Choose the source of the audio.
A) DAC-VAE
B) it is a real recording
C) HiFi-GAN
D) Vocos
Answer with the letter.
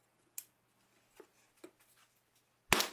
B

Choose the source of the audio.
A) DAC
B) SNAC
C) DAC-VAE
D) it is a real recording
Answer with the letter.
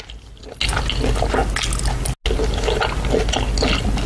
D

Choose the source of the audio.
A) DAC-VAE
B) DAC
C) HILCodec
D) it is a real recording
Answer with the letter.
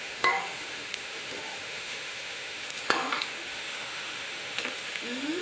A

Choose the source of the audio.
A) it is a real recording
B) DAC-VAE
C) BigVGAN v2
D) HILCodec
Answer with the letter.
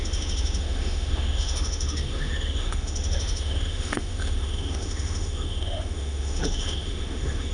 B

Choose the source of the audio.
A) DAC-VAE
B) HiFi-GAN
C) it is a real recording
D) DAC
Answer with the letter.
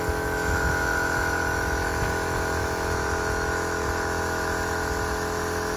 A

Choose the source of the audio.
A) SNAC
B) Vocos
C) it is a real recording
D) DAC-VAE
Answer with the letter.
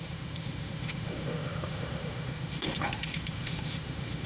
D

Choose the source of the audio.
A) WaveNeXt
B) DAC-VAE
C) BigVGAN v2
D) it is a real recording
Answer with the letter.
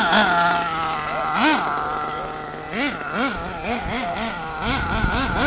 D